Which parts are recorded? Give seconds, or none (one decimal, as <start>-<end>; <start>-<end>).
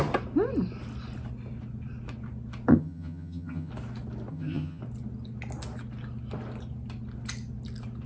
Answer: 0.0-2.7; 3.7-4.3; 4.8-8.1